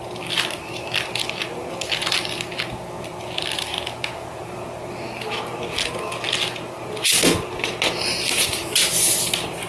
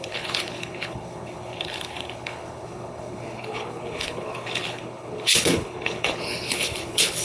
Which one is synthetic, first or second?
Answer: second